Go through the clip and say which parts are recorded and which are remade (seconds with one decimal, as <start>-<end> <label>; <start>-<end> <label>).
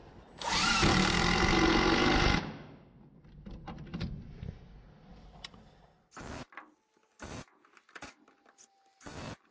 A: 0.0-9.5 recorded